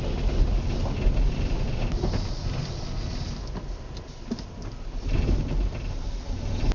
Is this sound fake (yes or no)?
no